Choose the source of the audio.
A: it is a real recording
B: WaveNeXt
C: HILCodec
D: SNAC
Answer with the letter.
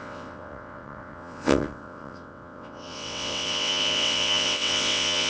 B